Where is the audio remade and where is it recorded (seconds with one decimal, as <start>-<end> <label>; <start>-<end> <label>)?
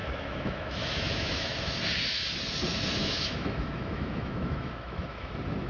0.0-1.6 remade; 1.6-3.0 recorded; 3.0-5.3 remade; 5.3-5.7 recorded